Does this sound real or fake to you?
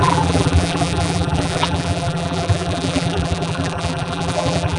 fake